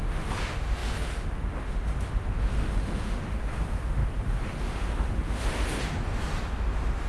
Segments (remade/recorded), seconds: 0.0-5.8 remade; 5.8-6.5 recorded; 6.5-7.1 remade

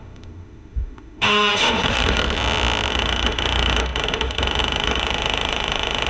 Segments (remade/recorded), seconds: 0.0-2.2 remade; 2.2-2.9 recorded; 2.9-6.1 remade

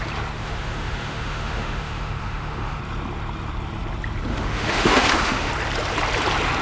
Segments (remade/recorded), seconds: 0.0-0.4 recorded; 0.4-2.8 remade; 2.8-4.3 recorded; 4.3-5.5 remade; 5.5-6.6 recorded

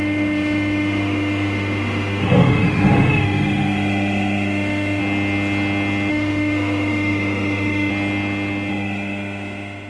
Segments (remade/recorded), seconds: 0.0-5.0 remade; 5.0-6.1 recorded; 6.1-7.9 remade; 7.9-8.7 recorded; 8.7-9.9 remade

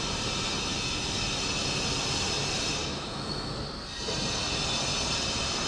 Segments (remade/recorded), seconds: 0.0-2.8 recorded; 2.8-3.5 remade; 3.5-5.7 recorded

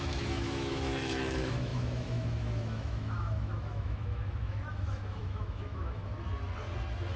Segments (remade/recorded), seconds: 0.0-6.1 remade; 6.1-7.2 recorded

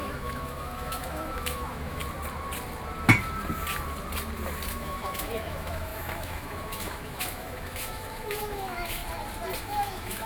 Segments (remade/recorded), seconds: 0.0-2.0 remade; 2.0-4.7 recorded; 4.7-9.0 remade; 9.0-9.6 recorded; 9.6-10.3 remade